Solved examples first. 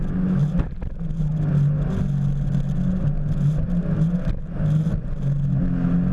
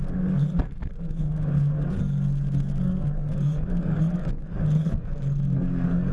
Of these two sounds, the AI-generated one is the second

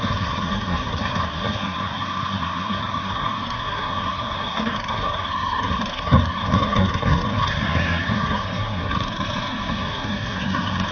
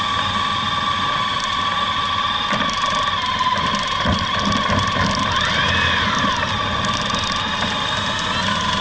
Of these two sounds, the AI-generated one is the first